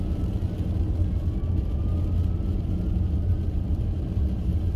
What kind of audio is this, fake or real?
real